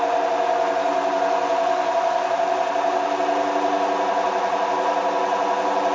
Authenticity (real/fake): real